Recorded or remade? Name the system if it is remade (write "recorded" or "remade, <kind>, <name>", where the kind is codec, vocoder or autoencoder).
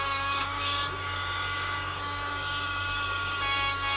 remade, codec, DAC